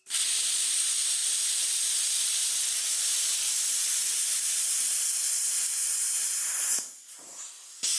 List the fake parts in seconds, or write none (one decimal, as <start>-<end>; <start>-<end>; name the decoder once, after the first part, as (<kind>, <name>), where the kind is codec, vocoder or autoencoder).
1.2-6.0 (vocoder, BigVGAN v2)